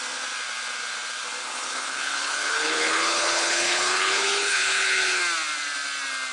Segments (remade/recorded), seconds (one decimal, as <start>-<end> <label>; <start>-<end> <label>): 0.0-1.4 recorded; 1.4-5.2 remade; 5.2-6.3 recorded